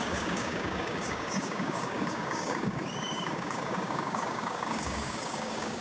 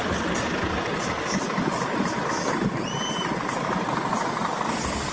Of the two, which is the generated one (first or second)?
first